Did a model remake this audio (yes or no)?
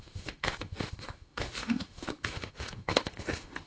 yes